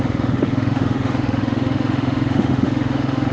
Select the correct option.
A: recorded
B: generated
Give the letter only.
B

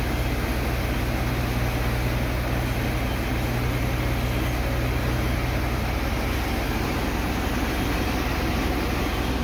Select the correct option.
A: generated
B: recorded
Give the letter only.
B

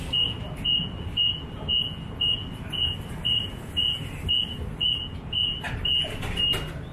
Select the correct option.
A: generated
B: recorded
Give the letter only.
B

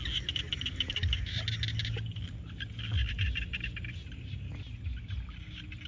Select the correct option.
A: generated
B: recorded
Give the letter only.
B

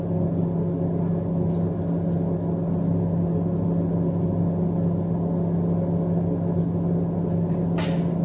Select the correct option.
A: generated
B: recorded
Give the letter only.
B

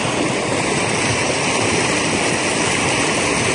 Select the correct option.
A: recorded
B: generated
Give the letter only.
A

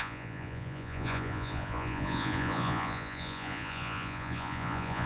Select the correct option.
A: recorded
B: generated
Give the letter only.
B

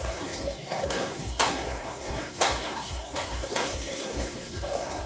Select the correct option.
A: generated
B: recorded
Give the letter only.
A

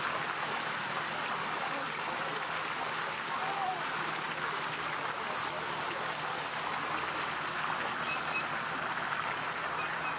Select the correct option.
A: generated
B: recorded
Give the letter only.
B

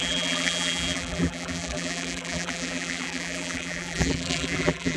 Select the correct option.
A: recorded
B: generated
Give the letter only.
B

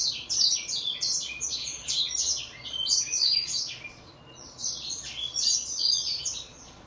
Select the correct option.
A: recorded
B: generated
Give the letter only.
B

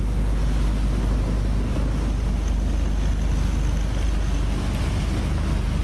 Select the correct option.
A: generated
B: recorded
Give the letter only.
B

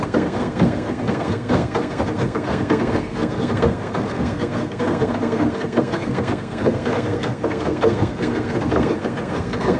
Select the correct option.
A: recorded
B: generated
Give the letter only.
B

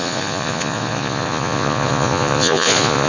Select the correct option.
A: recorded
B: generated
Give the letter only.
B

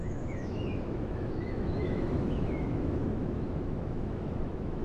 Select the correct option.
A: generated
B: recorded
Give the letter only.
A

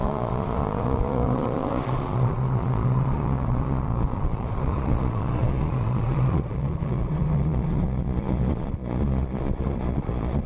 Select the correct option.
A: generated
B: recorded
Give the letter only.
A